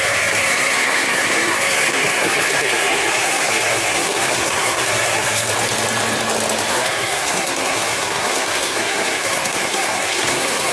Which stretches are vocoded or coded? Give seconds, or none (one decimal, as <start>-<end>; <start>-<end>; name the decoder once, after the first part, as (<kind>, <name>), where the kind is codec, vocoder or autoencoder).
0.0-5.5 (codec, SNAC); 6.7-10.7